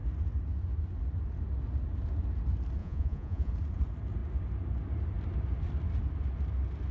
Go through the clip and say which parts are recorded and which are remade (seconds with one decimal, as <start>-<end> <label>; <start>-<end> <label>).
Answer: 0.0-2.8 recorded; 2.8-3.5 remade; 3.5-6.9 recorded